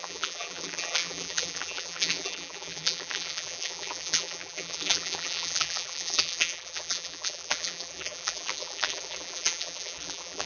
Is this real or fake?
fake